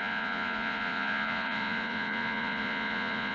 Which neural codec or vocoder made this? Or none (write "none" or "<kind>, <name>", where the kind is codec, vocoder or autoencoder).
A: vocoder, Vocos